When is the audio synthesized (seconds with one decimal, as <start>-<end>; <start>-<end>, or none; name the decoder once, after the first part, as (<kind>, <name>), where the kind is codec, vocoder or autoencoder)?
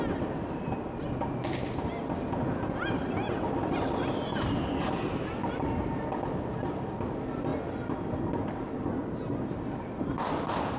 none